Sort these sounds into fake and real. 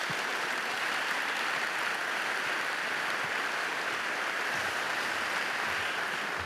fake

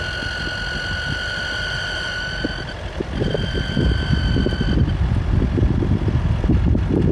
real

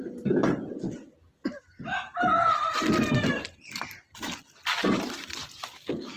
real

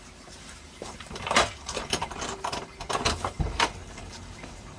fake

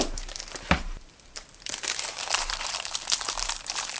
fake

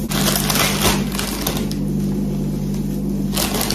real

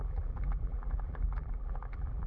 fake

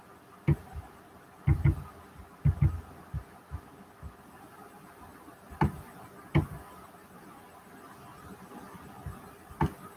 real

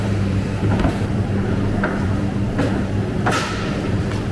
fake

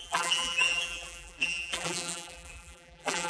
fake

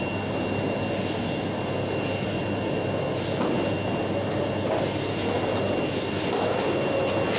real